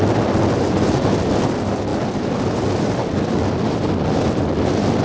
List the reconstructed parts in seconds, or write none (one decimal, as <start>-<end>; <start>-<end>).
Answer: none